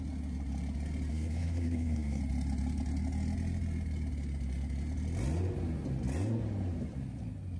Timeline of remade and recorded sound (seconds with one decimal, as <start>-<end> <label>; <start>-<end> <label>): 0.0-1.1 recorded; 1.1-2.2 remade; 2.2-7.6 recorded